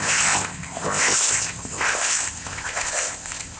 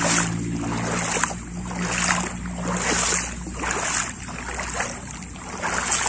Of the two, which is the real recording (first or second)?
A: second